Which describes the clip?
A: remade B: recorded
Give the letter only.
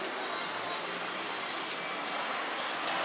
B